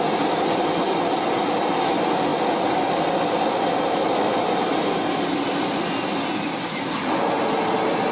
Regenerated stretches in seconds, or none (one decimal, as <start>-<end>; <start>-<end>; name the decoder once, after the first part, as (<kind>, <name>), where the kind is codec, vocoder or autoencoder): none